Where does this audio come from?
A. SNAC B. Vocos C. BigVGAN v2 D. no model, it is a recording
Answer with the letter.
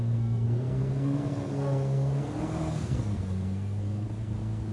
A